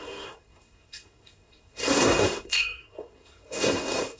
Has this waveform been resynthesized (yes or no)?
yes